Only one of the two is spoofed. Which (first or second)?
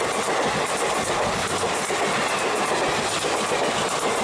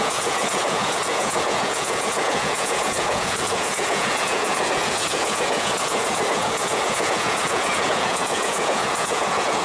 second